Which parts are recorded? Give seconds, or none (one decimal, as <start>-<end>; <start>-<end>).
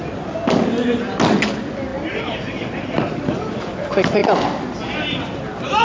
0.0-1.9; 2.6-5.8